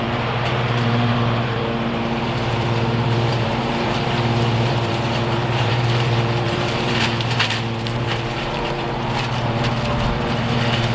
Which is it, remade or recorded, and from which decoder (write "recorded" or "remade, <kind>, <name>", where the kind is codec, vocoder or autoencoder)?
remade, vocoder, BigVGAN v2